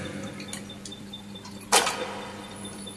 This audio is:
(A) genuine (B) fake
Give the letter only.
A